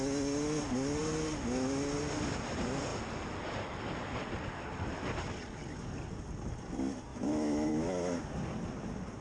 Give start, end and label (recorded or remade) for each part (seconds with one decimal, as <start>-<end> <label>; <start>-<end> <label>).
0.0-7.1 recorded; 7.1-7.7 remade; 7.7-9.2 recorded